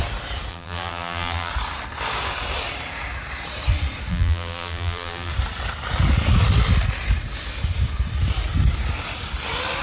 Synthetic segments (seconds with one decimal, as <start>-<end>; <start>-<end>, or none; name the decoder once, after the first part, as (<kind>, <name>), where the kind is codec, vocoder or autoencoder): 0.5-1.5 (vocoder, BigVGAN v2); 4.1-5.3